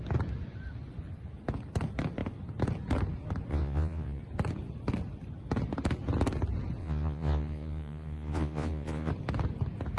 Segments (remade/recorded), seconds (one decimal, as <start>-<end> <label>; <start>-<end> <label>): 0.0-3.5 recorded; 3.5-4.2 remade; 4.2-6.8 recorded; 6.8-9.1 remade; 9.1-10.0 recorded